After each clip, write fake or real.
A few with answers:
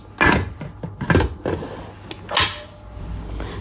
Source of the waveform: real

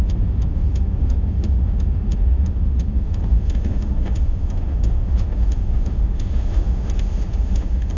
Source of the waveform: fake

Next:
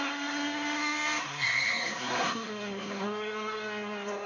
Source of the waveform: fake